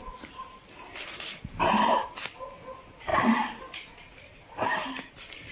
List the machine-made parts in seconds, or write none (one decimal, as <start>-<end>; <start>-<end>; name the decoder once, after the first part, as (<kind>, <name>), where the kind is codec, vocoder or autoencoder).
none

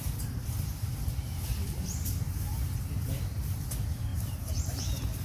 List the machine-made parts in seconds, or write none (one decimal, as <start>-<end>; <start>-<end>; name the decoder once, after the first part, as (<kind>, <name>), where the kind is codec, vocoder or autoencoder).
0.0-3.1 (vocoder, BigVGAN v2); 4.1-4.8